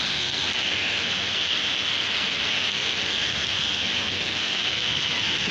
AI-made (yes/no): yes